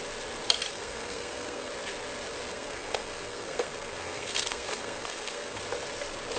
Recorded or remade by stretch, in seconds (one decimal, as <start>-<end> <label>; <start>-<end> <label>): 0.0-0.7 recorded; 0.7-1.7 remade; 1.7-2.5 recorded; 2.5-5.6 remade; 5.6-6.4 recorded